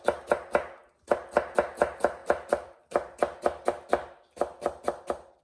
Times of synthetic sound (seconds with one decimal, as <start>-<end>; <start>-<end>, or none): 2.2-5.4